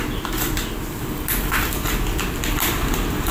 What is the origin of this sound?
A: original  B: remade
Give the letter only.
B